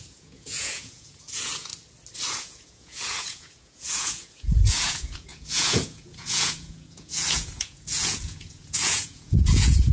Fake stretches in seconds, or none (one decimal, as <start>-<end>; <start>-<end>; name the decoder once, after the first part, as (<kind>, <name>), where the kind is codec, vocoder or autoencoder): 0.0-1.7 (vocoder, Vocos); 2.3-9.9

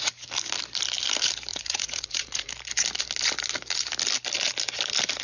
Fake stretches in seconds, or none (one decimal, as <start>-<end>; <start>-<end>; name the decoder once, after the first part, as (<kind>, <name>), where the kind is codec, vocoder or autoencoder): 1.5-2.5 (vocoder, Vocos)